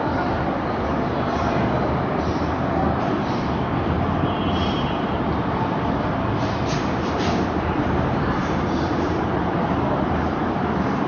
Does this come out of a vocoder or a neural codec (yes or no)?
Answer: yes